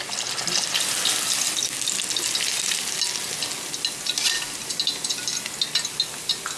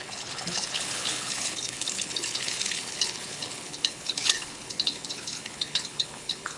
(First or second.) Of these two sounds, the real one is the first